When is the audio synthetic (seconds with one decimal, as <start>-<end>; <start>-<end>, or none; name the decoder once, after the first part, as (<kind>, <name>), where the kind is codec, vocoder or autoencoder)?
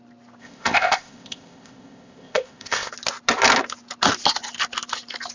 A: 0.4-2.9 (codec, ZipCodec)